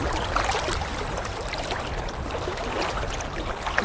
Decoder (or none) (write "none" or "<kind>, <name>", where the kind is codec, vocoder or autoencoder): none